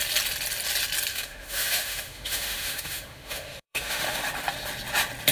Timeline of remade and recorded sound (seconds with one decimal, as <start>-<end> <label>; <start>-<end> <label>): 0.0-1.1 recorded; 1.1-4.3 remade; 4.3-5.3 recorded